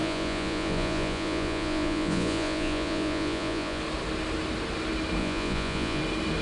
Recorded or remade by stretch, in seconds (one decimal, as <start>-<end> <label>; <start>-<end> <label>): 0.0-3.8 remade; 3.8-5.2 recorded; 5.2-6.0 remade; 6.0-6.4 recorded

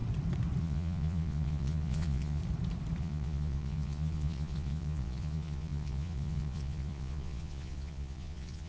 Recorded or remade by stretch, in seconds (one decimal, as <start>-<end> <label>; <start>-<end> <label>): 0.0-0.6 recorded; 0.6-2.4 remade; 2.4-3.0 recorded; 3.0-8.7 remade